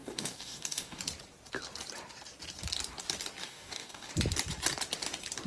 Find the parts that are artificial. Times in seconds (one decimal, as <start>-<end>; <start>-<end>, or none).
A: 0.0-1.0; 3.4-4.1